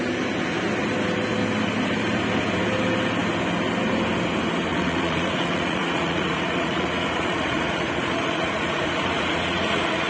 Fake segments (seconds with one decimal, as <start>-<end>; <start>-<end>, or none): 4.7-10.1